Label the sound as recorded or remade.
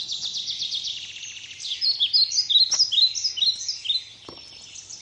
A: recorded